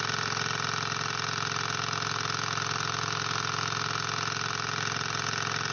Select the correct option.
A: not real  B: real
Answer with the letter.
B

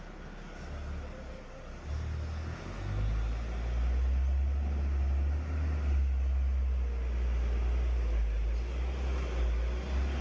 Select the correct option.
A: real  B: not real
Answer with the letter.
A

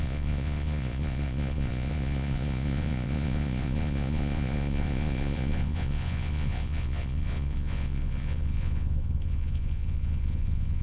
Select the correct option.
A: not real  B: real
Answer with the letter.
A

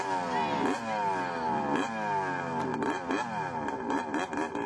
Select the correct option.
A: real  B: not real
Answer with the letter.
A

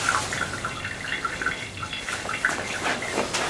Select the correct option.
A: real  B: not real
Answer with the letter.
A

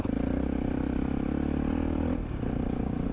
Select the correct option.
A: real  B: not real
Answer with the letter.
A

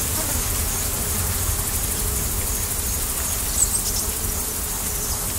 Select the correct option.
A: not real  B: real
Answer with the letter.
B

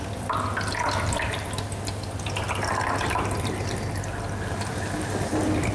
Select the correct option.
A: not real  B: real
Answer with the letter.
B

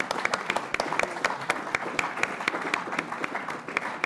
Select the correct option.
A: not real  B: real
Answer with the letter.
B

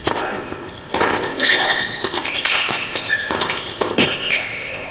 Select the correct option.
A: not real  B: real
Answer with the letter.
A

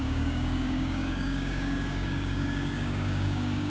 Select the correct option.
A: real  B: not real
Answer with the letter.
B